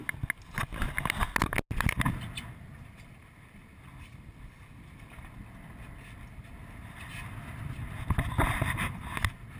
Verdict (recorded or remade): recorded